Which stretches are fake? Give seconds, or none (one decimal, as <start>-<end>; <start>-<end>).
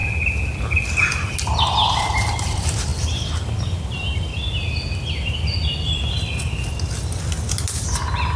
1.4-2.9; 3.6-4.3